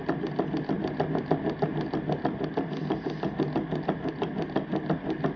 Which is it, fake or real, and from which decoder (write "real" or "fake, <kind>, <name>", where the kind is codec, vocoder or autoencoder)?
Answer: real